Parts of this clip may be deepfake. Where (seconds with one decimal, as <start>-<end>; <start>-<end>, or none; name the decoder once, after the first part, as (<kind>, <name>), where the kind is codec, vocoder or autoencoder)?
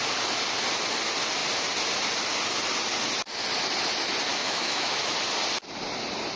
4.3-5.0 (autoencoder, DAC-VAE)